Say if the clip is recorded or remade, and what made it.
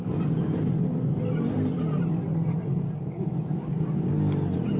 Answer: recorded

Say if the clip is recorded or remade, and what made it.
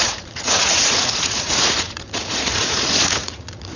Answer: remade, vocoder, Vocos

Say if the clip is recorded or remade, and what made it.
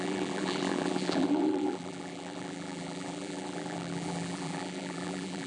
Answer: remade, vocoder, BigVGAN v2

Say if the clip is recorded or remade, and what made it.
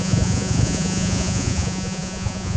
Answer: remade, vocoder, Vocos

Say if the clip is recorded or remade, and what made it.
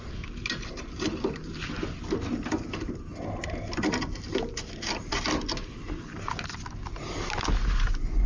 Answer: recorded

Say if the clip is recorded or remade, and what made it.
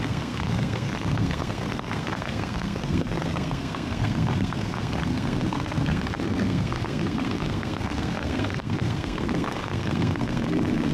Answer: remade, codec, SNAC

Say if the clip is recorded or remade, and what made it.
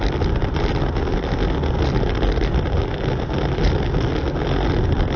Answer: recorded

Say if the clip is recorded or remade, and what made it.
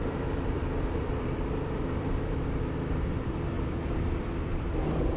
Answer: remade, vocoder, BigVGAN v2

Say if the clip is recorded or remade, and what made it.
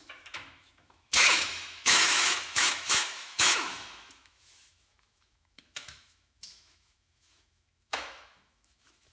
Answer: remade, autoencoder, DAC-VAE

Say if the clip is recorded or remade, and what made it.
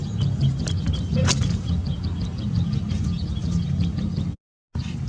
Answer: recorded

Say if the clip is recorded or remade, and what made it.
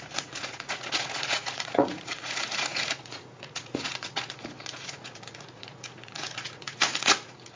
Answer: remade, vocoder, Vocos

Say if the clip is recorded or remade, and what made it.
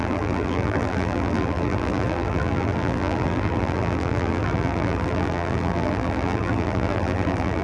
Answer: remade, vocoder, BigVGAN v2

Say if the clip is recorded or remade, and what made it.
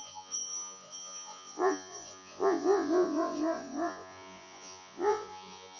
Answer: remade, vocoder, Vocos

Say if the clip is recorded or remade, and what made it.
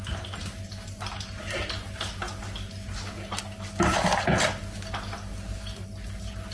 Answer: recorded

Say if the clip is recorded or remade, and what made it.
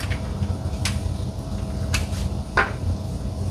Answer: recorded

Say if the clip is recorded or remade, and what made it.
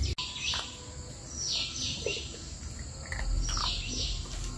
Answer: recorded